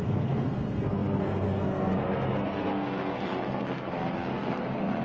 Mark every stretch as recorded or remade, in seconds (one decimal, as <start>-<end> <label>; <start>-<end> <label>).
0.0-5.0 remade